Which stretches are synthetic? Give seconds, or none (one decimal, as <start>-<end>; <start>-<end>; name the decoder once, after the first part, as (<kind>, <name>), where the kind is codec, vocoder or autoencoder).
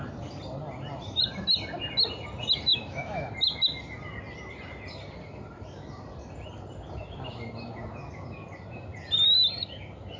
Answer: 2.7-3.3 (autoencoder, DAC-VAE)